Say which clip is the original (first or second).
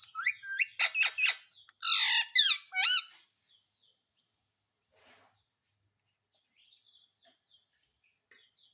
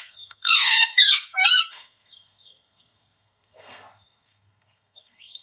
first